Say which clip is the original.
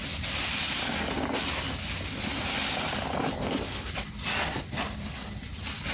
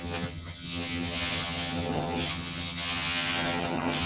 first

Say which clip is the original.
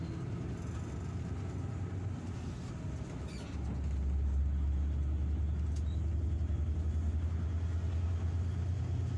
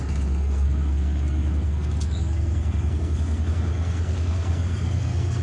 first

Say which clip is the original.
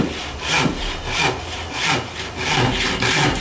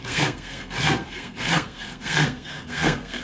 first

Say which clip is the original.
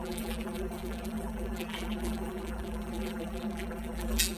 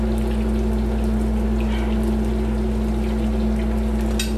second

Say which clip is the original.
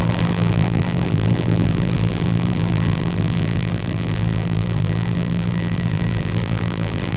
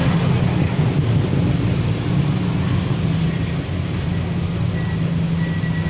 second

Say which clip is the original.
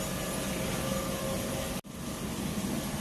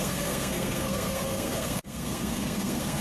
first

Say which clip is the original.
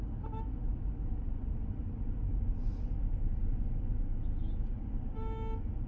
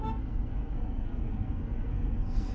first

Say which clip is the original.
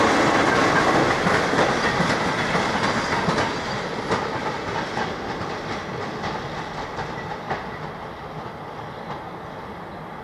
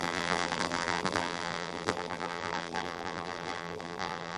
first